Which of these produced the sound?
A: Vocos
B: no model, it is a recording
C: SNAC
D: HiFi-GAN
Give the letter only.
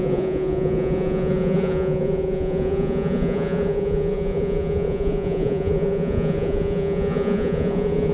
A